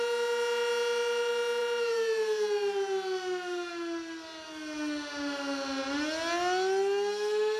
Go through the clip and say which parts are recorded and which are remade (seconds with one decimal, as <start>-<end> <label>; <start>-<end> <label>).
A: 0.0-7.6 recorded